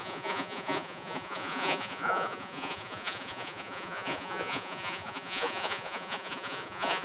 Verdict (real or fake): fake